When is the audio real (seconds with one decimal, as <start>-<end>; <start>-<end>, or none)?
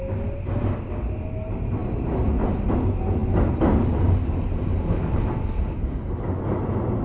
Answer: 0.0-7.0